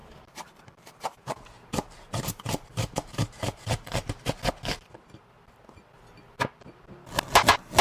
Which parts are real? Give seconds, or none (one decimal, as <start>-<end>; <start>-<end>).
4.5-7.8

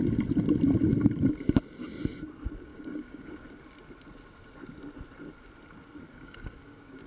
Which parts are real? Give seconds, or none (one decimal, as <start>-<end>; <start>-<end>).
0.0-2.7; 3.3-6.1